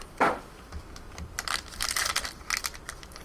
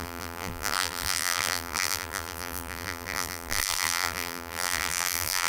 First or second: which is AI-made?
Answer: second